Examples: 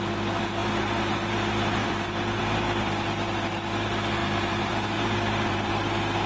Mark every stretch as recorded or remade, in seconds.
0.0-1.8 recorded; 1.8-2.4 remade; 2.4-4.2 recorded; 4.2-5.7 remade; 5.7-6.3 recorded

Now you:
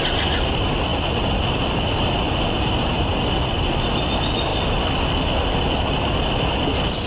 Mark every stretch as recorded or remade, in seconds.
0.0-0.9 recorded; 0.9-3.3 remade; 3.3-7.1 recorded